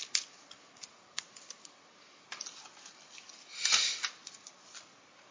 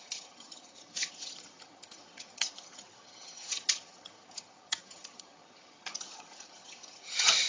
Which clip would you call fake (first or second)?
second